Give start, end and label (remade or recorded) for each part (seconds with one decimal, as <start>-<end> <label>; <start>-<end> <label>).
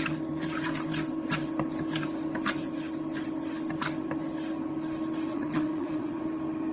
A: 0.0-5.3 recorded; 5.3-6.2 remade; 6.2-6.7 recorded